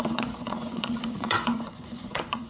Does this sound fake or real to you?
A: fake